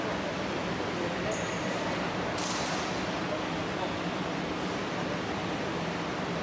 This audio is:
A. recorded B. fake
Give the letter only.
A